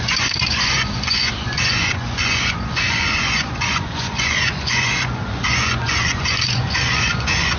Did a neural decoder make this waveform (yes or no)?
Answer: yes